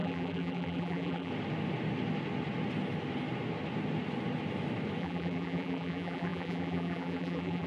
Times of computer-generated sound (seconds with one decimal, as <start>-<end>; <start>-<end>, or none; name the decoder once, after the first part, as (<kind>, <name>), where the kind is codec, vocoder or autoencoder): 0.0-1.3 (vocoder, BigVGAN v2); 5.0-7.7